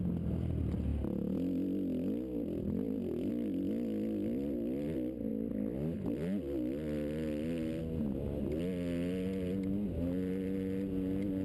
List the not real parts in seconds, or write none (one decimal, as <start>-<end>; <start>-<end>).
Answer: none